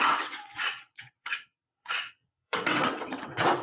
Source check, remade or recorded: remade